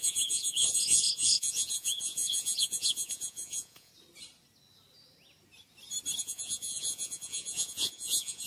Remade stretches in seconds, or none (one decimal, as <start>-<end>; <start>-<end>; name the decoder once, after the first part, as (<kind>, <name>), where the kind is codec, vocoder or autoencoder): 0.0-3.9 (vocoder, Vocos); 6.2-8.5